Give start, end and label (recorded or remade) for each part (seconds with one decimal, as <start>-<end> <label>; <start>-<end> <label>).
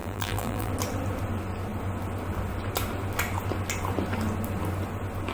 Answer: 0.0-0.7 remade; 0.7-5.3 recorded